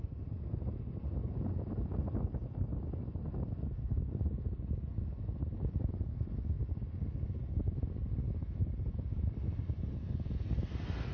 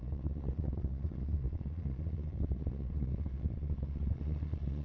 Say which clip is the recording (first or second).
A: first